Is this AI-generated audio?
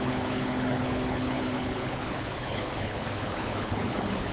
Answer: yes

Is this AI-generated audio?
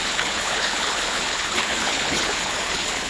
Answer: yes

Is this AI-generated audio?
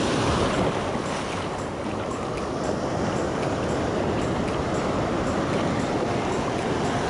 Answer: no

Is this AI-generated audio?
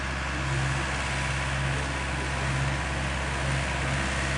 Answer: no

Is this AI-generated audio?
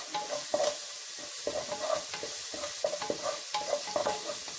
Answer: no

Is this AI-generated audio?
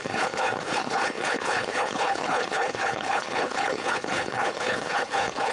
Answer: yes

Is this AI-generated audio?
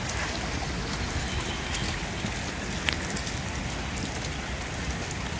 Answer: no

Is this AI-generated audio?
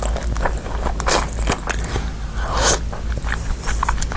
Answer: no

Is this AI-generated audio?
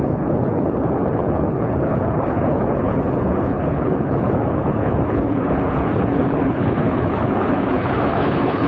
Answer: yes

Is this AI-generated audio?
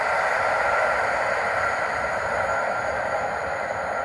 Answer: no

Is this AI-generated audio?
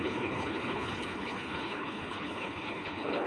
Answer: yes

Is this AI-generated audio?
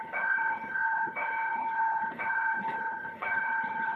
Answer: yes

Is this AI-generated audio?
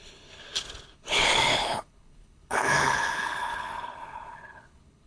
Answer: yes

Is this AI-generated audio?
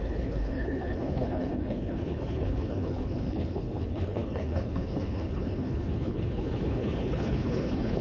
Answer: yes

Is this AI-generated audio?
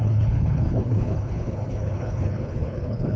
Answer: yes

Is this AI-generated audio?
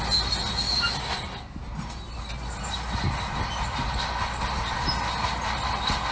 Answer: no